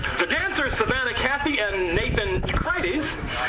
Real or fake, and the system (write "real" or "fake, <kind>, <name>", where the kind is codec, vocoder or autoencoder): fake, autoencoder, DAC-VAE